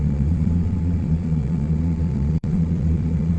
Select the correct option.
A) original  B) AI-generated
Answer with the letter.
B